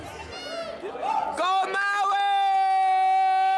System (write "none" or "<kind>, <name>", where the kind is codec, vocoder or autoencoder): none